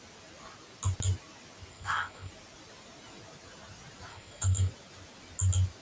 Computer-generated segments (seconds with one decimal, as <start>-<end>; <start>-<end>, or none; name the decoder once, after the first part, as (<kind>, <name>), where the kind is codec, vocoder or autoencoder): 1.7-2.3 (codec, SNAC); 4.1-4.7